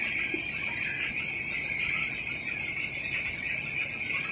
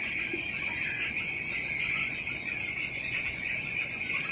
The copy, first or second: second